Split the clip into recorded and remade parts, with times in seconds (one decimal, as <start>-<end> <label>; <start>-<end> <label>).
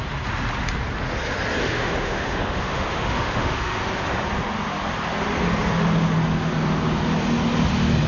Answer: 0.0-1.6 recorded; 1.6-3.8 remade; 3.8-8.1 recorded